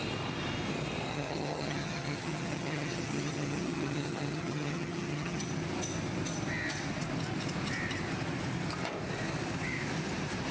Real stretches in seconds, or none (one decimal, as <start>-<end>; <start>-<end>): 0.0-1.1; 5.5-10.5